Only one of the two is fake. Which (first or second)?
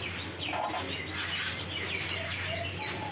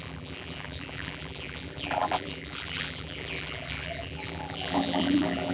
second